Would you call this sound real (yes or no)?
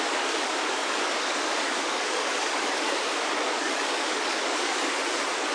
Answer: no